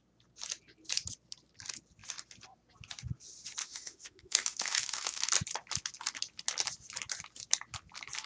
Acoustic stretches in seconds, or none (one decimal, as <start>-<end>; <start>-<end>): 0.0-3.6; 5.3-8.3